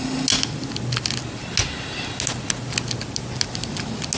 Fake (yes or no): no